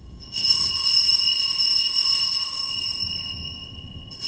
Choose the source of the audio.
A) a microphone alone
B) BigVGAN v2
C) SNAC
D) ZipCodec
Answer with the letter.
D